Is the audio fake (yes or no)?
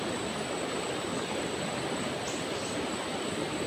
no